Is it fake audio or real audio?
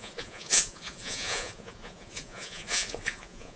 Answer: fake